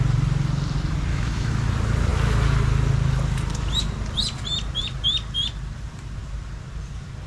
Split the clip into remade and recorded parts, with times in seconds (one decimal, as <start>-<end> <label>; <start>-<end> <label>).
0.0-1.1 recorded; 1.1-1.7 remade; 1.7-7.3 recorded